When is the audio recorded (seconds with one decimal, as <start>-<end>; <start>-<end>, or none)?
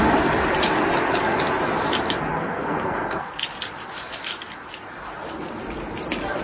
0.0-2.3; 3.4-6.4